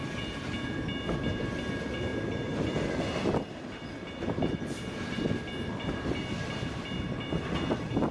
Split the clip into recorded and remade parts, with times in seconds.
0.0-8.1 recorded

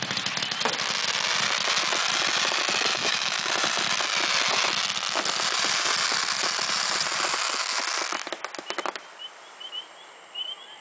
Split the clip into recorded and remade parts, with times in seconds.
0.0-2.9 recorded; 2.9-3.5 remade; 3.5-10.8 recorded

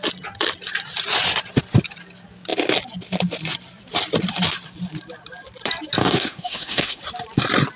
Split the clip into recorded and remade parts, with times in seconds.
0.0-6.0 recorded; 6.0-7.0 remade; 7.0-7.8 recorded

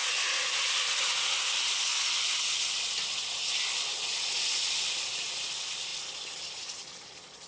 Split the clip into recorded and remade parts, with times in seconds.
0.0-7.5 recorded

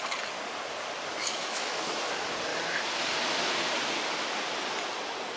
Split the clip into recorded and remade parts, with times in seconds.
0.0-1.2 recorded; 1.2-2.0 remade; 2.0-5.4 recorded

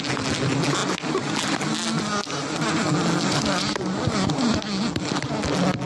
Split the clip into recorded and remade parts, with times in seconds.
0.0-5.9 recorded